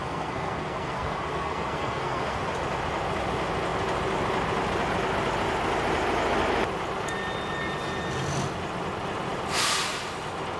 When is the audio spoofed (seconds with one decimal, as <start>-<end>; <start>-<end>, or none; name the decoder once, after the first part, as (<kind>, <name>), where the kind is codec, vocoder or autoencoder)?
0.0-2.4 (codec, SNAC)